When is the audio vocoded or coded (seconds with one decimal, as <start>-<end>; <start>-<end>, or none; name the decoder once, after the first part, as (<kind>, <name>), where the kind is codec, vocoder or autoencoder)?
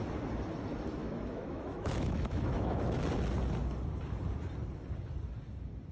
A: 1.0-3.0 (autoencoder, DAC-VAE)